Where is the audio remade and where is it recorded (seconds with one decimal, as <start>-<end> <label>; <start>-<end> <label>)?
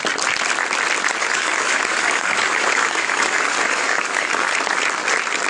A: 0.0-1.2 recorded; 1.2-4.5 remade; 4.5-5.5 recorded